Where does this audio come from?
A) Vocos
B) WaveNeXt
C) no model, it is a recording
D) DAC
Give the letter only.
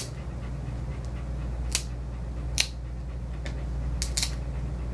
C